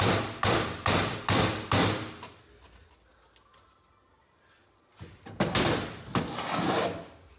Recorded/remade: recorded